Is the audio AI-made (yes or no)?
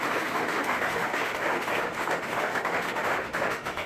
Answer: yes